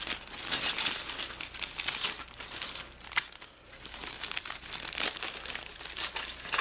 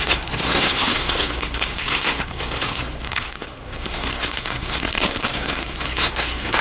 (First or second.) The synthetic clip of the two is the second